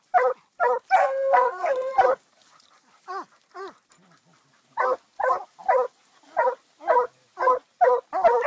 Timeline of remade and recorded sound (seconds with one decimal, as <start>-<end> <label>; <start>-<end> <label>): 0.0-1.0 recorded; 1.0-1.9 remade; 1.9-8.5 recorded